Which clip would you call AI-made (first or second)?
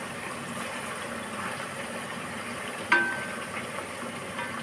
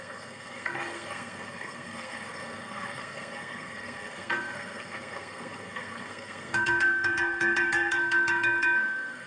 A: second